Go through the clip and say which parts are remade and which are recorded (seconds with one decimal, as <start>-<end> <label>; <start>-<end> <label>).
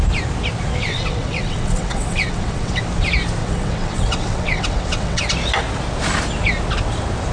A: 0.0-0.8 recorded; 0.8-2.8 remade; 2.8-3.4 recorded; 3.4-5.2 remade; 5.2-7.3 recorded